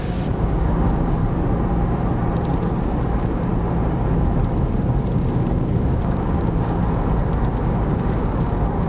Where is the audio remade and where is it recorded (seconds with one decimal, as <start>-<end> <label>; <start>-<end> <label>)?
0.0-1.2 remade; 1.2-2.8 recorded; 2.8-3.5 remade; 3.5-5.3 recorded; 5.3-6.8 remade; 6.8-7.5 recorded; 7.5-8.9 remade